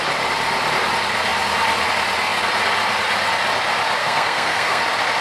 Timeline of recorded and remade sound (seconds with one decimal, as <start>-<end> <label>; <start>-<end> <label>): 0.0-4.0 recorded; 4.0-4.8 remade; 4.8-5.2 recorded